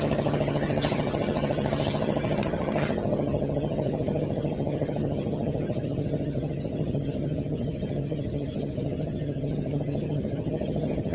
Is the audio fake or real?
fake